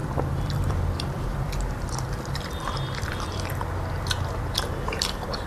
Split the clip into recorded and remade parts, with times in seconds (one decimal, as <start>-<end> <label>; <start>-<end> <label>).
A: 0.0-3.3 remade; 3.3-5.5 recorded